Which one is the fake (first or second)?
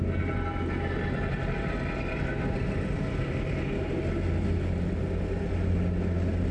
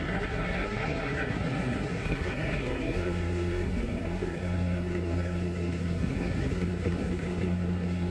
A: second